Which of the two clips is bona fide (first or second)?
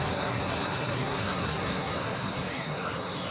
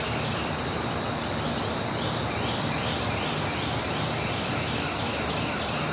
second